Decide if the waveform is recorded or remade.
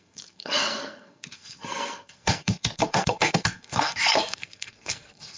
remade